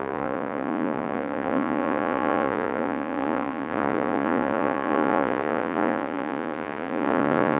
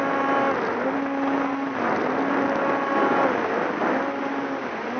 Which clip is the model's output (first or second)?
first